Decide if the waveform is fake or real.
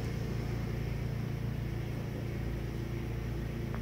real